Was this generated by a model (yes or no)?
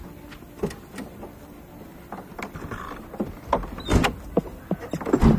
no